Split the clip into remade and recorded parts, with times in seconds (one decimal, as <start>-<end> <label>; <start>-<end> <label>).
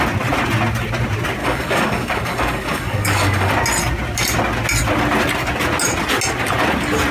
0.0-1.4 recorded; 1.4-3.5 remade; 3.5-7.1 recorded